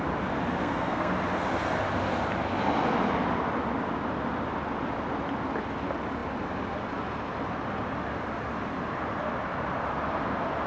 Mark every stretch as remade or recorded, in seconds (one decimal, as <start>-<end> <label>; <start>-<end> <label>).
0.0-0.6 recorded; 0.6-1.1 remade; 1.1-10.7 recorded